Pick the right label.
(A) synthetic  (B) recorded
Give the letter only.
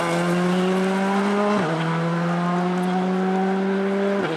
B